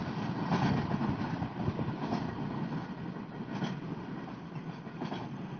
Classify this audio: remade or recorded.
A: recorded